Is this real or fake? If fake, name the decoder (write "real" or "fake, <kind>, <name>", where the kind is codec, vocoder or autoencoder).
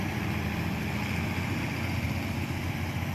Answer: fake, vocoder, BigVGAN v2